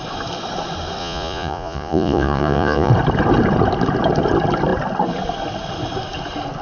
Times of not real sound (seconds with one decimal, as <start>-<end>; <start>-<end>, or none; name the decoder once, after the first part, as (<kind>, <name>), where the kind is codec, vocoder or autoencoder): 1.0-2.9 (vocoder, Vocos)